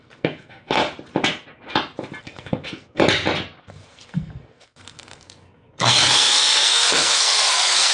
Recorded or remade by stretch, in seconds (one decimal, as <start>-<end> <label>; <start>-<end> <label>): 0.0-0.8 remade; 0.8-2.2 recorded; 2.2-3.0 remade; 3.0-3.6 recorded; 3.6-7.9 remade